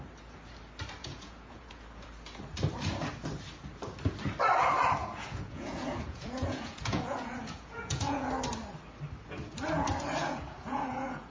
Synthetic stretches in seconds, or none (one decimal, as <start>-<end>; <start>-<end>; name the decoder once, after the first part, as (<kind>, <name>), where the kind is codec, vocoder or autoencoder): 1.0-2.1 (vocoder, Vocos); 5.0-8.3; 10.2-11.3